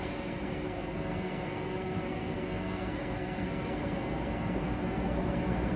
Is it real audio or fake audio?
fake